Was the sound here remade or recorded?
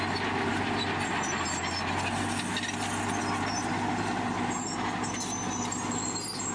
recorded